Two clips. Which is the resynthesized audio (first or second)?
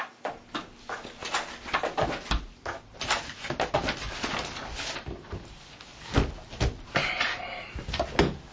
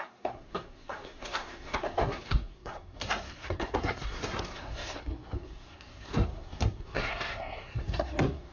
second